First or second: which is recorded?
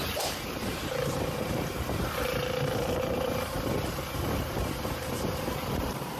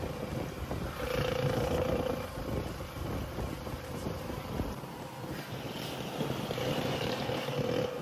second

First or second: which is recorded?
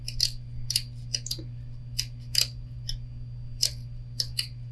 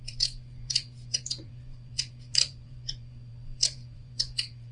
first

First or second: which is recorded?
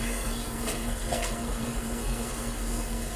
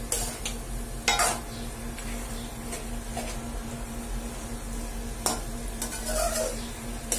second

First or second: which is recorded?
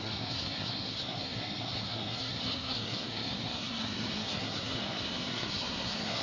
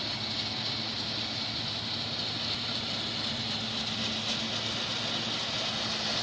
second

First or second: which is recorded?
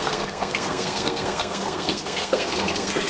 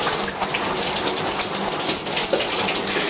second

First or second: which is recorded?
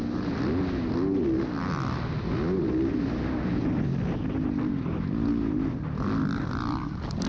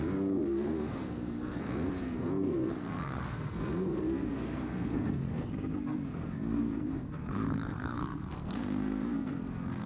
first